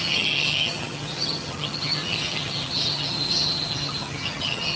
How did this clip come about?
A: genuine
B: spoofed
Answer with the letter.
B